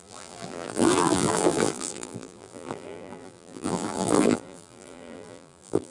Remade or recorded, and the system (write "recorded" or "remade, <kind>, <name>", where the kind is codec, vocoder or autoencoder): remade, vocoder, BigVGAN v2